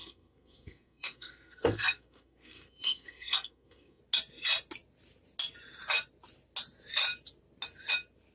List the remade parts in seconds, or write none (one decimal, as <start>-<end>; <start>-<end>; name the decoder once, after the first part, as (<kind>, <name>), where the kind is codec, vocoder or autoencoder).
0.0-4.0 (codec, SNAC)